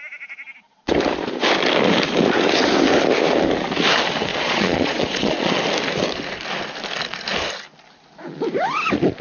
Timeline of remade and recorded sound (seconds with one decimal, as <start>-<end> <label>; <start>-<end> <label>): 0.0-4.3 recorded; 4.3-5.6 remade; 5.6-9.2 recorded